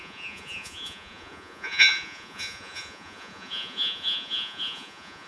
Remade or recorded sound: remade